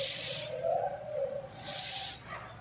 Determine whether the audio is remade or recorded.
remade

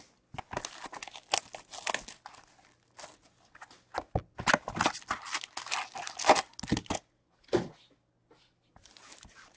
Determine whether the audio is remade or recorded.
recorded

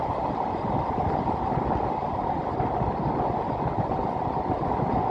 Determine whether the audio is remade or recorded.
recorded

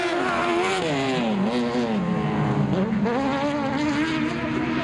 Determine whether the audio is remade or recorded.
recorded